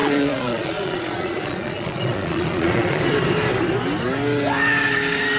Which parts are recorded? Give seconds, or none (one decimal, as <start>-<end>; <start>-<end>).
3.0-5.4